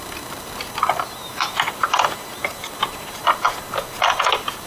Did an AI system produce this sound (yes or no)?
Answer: no